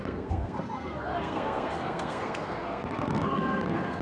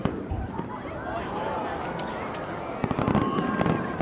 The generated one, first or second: first